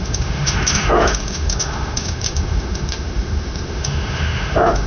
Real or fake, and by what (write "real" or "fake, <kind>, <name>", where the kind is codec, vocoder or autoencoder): fake, autoencoder, DAC-VAE